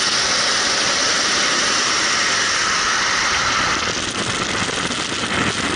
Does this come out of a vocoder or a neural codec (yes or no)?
no